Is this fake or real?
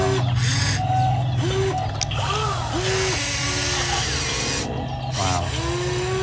real